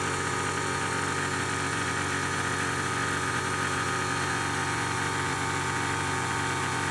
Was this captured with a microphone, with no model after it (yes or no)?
no